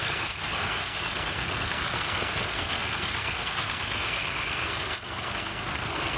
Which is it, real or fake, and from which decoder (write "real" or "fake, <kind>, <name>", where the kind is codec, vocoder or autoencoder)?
fake, codec, SNAC